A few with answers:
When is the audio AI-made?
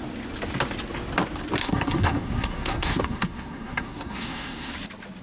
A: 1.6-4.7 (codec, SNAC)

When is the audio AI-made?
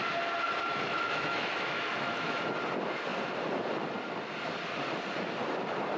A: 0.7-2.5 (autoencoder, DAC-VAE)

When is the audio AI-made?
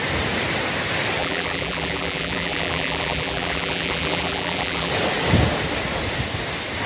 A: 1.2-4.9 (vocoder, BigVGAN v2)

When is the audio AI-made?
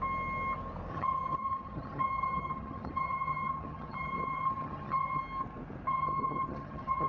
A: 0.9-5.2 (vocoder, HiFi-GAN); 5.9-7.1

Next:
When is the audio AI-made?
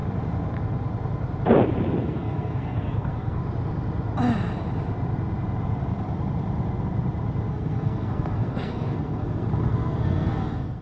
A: 2.0-3.4 (codec, SNAC); 7.5-10.8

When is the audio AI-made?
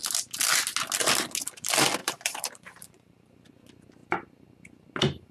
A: 2.0-3.3 (vocoder, BigVGAN v2)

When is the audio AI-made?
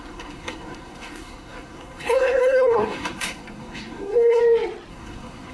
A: 0.0-4.4 (codec, SNAC); 4.9-5.5